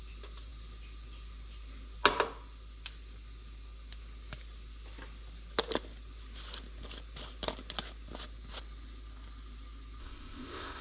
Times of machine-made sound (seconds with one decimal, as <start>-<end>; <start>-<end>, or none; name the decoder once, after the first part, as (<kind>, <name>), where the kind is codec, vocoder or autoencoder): 10.0-10.8 (codec, ZipCodec)